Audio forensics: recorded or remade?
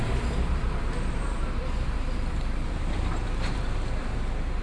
remade